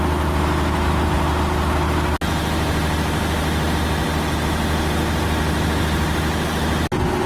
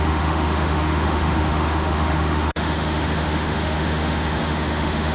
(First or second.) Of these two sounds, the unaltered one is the first